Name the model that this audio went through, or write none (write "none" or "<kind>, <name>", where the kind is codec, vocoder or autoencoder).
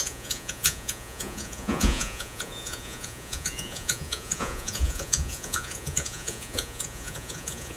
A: vocoder, Vocos